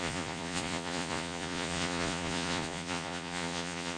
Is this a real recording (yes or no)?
no